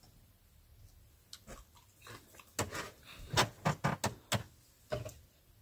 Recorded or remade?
recorded